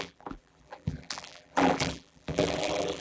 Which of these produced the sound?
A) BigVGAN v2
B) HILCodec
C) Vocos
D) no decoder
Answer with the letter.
A